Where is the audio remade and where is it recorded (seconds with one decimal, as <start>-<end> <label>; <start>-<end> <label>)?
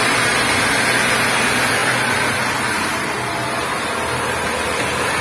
0.0-5.2 recorded